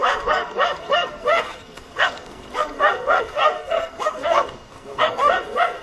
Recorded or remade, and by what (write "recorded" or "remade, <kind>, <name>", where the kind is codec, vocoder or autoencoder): remade, codec, SNAC